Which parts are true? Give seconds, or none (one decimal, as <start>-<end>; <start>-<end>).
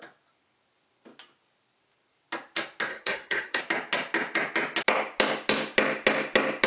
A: 0.0-2.9; 3.6-6.7